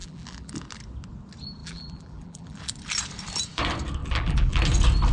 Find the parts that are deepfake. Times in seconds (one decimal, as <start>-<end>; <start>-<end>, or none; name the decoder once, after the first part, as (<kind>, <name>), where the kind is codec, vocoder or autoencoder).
0.0-0.5 (vocoder, BigVGAN v2); 1.6-2.6; 4.0-4.6